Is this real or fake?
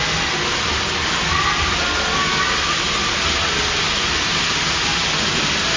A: real